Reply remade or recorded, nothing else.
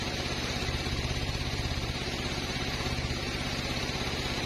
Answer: remade